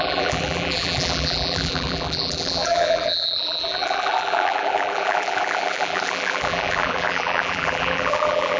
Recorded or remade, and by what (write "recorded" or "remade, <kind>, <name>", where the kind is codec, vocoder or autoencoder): remade, vocoder, BigVGAN v2